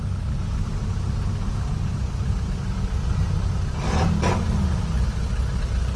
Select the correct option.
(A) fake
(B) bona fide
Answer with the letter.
B